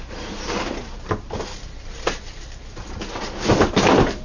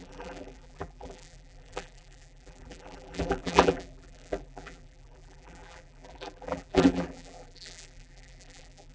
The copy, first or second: second